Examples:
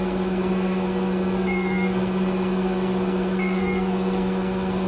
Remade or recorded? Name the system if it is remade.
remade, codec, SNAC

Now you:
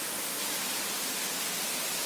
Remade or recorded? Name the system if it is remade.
recorded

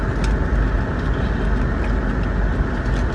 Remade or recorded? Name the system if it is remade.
recorded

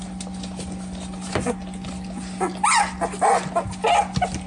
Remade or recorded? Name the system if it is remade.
recorded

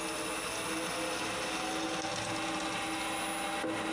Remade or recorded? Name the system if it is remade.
recorded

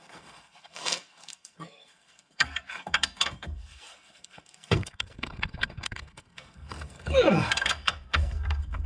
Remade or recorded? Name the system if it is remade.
remade, codec, SNAC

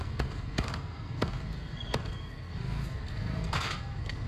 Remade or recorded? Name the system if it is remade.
remade, codec, SNAC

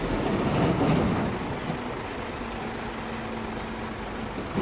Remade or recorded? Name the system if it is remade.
recorded